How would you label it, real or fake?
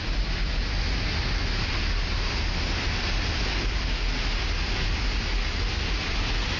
real